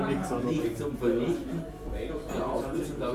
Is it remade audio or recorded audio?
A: recorded